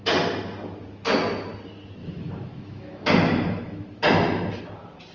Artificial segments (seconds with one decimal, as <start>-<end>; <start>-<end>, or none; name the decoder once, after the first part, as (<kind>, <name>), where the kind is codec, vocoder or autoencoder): 2.0-4.0 (autoencoder, DAC-VAE)